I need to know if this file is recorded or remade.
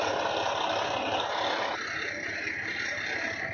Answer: recorded